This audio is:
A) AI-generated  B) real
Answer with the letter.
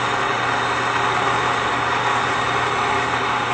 B